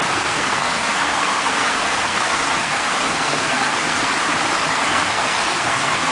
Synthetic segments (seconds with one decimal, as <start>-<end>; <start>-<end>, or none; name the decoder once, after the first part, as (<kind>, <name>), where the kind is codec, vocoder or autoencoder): 0.0-4.1 (codec, SNAC); 4.7-6.1